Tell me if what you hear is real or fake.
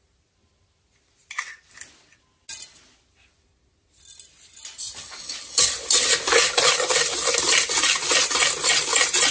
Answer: real